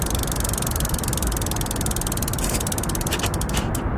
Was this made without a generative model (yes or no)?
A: yes